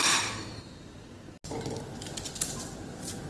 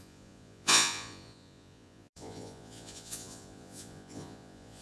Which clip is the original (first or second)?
first